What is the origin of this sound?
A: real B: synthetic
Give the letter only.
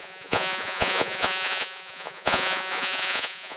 B